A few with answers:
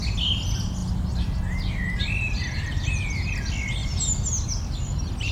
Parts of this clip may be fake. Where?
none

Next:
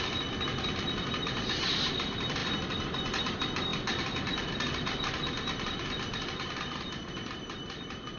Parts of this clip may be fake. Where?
none